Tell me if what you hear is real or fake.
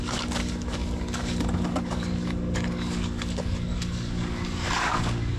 fake